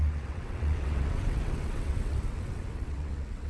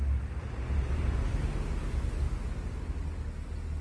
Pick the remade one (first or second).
first